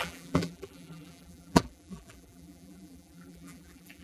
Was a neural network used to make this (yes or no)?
yes